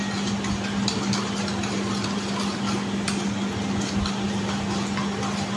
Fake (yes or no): no